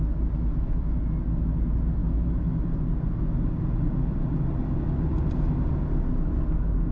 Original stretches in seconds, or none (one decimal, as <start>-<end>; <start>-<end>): 0.0-2.0; 2.7-6.9